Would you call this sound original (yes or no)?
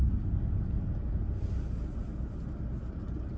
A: yes